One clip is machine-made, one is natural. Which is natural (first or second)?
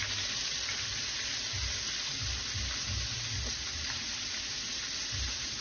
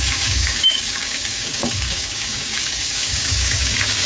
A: first